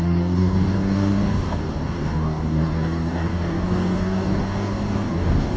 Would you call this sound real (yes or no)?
no